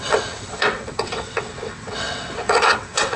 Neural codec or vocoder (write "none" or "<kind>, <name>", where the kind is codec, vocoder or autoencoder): vocoder, WaveNeXt